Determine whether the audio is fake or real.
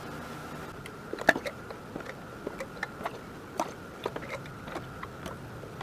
fake